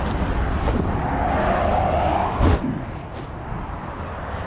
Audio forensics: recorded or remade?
recorded